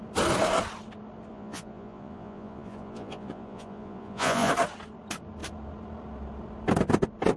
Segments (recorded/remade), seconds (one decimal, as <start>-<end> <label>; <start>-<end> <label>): 0.0-1.3 recorded; 1.3-4.5 remade; 4.5-7.4 recorded